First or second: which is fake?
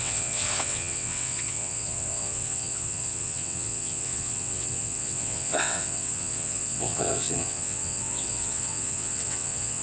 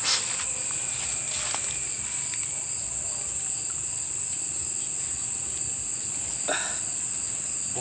first